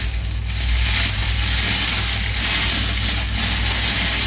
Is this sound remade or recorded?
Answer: recorded